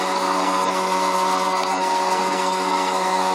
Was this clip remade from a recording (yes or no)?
yes